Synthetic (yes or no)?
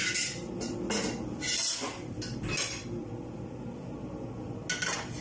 no